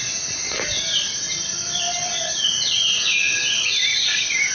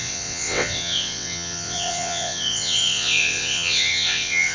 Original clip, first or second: first